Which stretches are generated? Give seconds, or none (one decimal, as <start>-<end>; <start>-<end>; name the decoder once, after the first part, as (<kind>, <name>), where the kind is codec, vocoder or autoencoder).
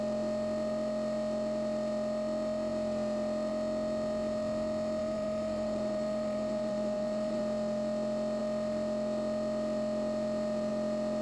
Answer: 5.0-7.4 (vocoder, BigVGAN v2)